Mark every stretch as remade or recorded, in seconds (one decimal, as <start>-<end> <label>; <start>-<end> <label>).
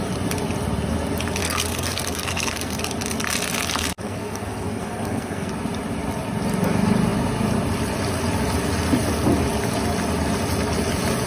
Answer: 0.0-1.4 recorded; 1.4-2.8 remade; 2.8-3.9 recorded; 3.9-5.5 remade; 5.5-11.3 recorded